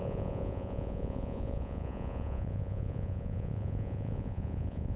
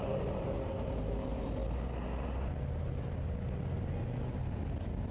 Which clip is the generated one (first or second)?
first